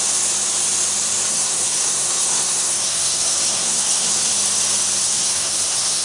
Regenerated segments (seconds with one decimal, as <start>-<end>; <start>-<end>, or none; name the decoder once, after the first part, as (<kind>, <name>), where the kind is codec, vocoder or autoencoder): 1.3-4.3 (codec, SNAC); 5.0-6.0